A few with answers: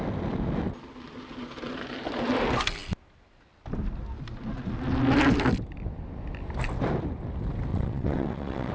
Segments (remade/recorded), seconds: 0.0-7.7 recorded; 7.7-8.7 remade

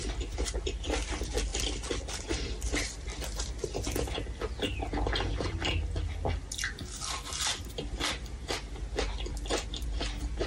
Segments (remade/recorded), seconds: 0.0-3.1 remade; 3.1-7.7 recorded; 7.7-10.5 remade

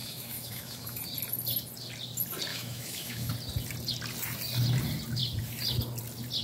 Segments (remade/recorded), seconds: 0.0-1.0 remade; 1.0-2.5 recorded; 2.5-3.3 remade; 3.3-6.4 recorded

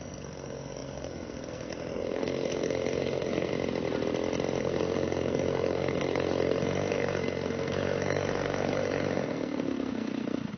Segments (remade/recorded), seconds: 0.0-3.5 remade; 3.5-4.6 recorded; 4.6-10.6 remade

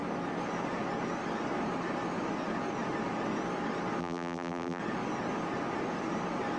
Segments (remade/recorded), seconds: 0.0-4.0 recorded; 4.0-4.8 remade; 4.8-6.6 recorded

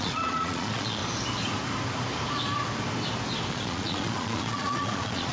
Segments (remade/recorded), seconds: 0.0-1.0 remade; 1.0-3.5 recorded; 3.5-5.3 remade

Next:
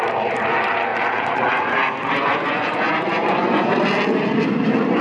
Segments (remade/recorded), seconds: 0.0-0.9 recorded; 0.9-3.7 remade; 3.7-5.0 recorded

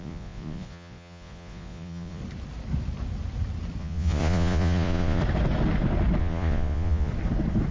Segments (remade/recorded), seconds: 0.0-2.2 remade; 2.2-3.8 recorded; 3.8-5.2 remade; 5.2-6.2 recorded; 6.2-7.1 remade; 7.1-7.7 recorded